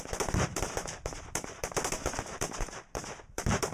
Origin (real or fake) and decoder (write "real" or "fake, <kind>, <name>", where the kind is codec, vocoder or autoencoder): fake, vocoder, BigVGAN v2